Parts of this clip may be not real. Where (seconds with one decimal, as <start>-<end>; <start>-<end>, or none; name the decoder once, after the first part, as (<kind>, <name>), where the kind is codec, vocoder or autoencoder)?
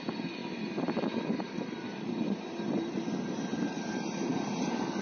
0.4-3.4 (vocoder, BigVGAN v2)